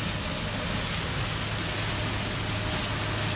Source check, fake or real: real